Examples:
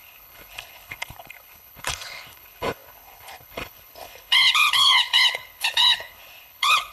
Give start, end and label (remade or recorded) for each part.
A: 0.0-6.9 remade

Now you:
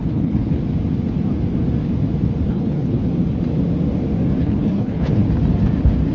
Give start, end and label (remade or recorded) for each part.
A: 0.0-0.6 remade; 0.6-2.5 recorded; 2.5-3.0 remade; 3.0-4.4 recorded; 4.4-5.2 remade; 5.2-6.1 recorded

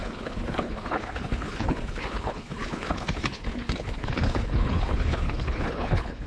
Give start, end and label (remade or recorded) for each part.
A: 0.0-6.3 remade